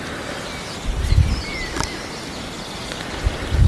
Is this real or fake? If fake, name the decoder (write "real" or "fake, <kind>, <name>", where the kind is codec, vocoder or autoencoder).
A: real